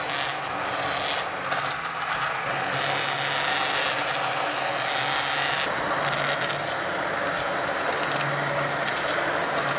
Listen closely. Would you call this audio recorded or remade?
recorded